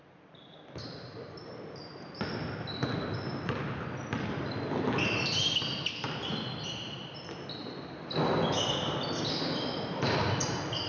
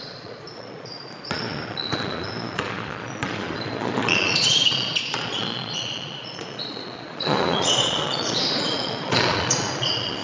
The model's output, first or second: second